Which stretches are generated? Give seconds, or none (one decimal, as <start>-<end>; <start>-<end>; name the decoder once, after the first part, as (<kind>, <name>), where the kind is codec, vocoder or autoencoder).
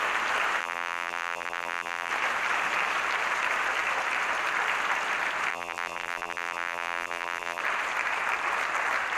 0.6-2.1 (vocoder, BigVGAN v2); 5.5-7.6